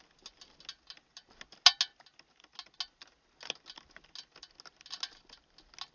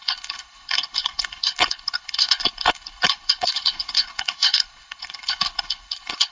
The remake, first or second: second